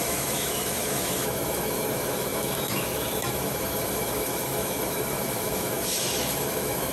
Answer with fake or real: fake